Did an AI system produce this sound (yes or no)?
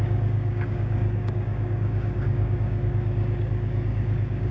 yes